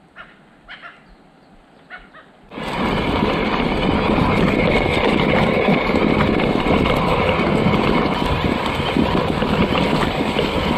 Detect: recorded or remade recorded